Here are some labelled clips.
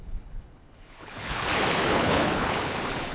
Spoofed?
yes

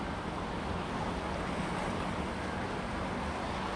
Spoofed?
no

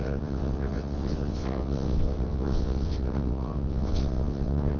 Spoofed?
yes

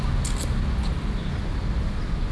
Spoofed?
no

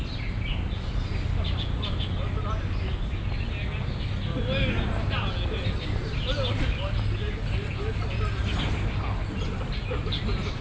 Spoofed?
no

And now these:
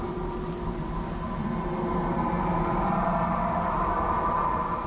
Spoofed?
yes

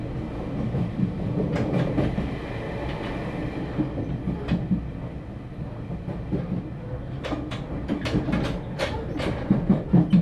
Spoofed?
no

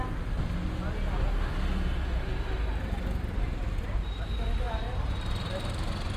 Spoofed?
no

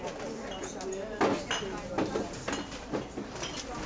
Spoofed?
no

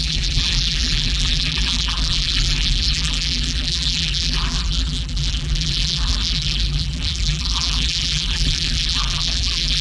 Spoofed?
yes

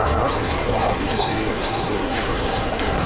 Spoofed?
yes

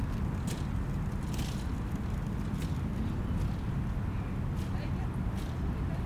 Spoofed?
no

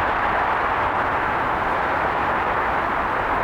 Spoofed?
no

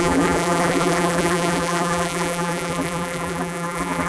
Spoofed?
yes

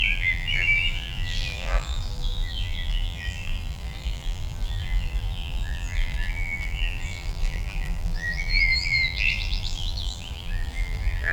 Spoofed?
yes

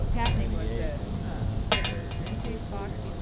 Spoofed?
no